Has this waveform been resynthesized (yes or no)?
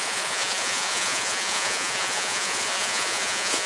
yes